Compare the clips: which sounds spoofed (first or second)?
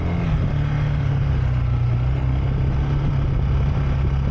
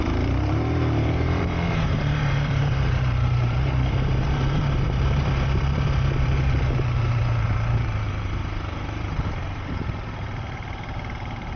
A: second